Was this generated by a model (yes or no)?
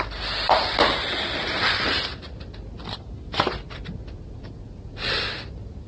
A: no